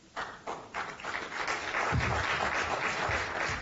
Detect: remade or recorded recorded